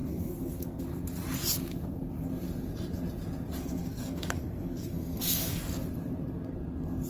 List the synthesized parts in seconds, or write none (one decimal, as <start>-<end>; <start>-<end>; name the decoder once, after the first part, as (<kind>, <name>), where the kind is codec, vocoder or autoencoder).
0.0-0.8 (codec, SNAC); 3.6-5.6